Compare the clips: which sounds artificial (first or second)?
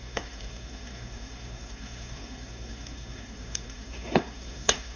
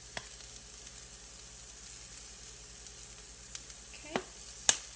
first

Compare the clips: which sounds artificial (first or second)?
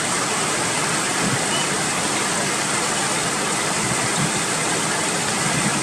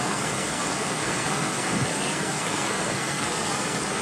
second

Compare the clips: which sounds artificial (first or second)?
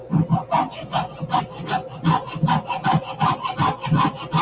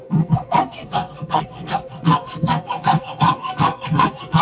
second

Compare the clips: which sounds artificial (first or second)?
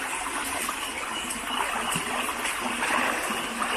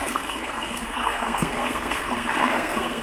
second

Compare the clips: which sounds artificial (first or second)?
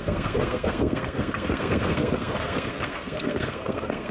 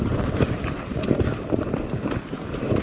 first